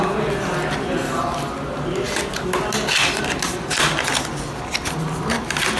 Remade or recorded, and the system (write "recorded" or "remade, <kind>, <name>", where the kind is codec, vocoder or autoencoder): recorded